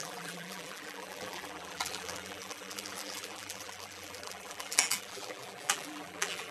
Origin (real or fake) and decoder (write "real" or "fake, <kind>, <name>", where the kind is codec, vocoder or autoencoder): fake, vocoder, BigVGAN v2